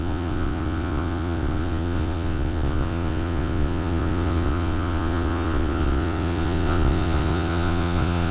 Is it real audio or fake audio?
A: fake